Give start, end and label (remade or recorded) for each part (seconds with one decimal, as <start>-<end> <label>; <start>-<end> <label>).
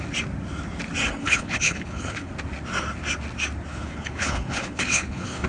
0.0-1.2 recorded; 1.2-2.3 remade; 2.3-3.7 recorded; 3.7-5.5 remade